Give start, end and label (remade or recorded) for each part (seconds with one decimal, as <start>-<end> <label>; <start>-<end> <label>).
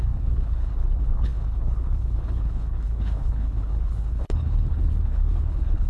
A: 0.0-5.9 remade